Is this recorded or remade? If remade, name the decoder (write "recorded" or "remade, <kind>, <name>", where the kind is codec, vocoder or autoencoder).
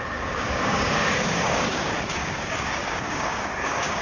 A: remade, codec, DAC